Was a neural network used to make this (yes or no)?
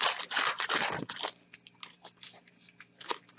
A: no